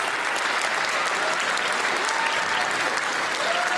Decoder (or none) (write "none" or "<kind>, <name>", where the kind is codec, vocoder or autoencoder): none